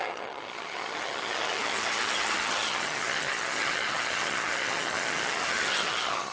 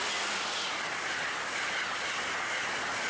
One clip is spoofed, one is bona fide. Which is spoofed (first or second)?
first